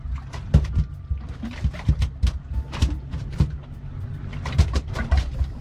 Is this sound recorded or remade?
recorded